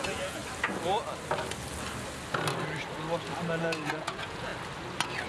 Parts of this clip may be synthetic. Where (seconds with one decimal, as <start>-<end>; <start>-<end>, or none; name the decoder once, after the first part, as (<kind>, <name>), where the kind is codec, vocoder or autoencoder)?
0.0-0.4 (vocoder, Vocos); 3.6-4.5